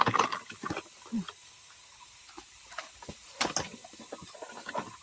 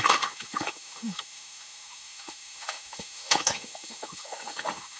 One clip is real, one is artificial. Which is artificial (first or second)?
second